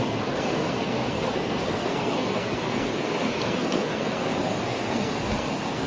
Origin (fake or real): fake